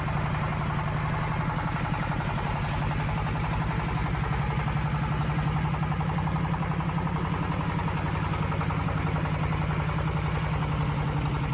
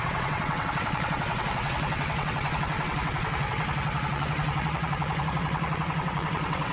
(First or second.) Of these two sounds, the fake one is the second